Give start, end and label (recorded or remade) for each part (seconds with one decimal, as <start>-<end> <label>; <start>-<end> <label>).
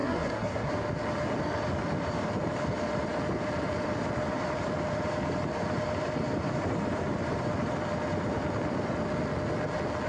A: 0.0-0.7 remade; 0.7-10.1 recorded